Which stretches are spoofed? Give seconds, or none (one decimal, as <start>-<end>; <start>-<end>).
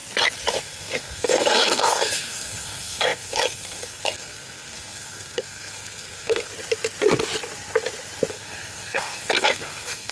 0.6-6.5; 8.3-10.1